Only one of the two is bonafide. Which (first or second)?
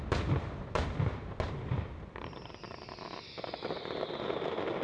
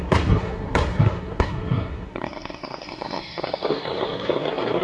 first